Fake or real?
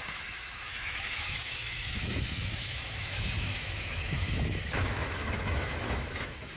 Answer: fake